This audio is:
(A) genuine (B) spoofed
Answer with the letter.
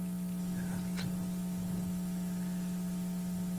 A